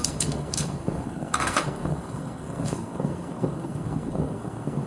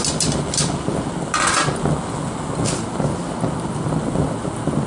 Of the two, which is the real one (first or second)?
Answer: second